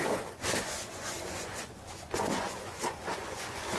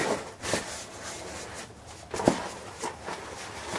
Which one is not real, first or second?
first